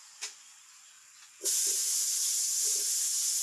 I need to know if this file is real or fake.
fake